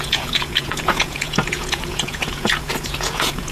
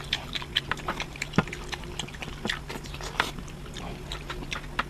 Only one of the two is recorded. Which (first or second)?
second